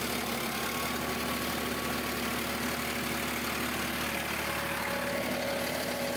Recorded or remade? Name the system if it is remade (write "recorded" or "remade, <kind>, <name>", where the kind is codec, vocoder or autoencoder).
recorded